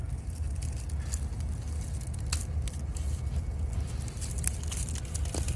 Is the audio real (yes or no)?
yes